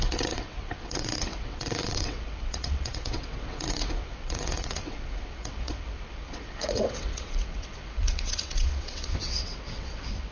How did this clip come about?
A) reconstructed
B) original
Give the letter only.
A